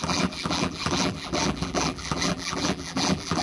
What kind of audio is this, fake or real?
fake